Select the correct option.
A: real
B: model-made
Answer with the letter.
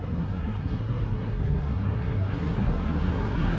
B